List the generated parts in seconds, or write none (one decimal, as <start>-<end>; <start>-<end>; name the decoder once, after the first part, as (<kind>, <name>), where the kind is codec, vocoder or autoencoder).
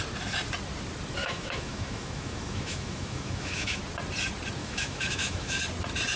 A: 1.2-3.8 (autoencoder, DAC-VAE); 4.6-5.6